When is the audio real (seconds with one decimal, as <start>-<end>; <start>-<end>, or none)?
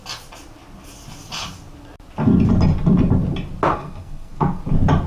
0.0-3.7; 4.6-5.1